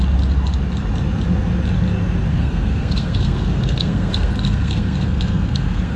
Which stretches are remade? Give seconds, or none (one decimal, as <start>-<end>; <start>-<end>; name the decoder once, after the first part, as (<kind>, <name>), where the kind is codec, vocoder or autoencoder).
2.3-6.0 (codec, SNAC)